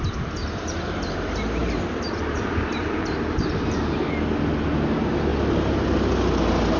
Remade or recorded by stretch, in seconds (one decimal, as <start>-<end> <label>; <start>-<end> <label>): 0.0-1.6 remade; 1.6-2.2 recorded; 2.2-4.0 remade; 4.0-4.7 recorded; 4.7-5.3 remade; 5.3-6.8 recorded